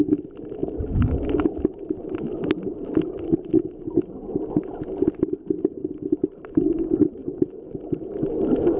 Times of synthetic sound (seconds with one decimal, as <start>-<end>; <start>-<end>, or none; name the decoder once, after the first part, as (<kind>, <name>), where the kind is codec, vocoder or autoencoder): none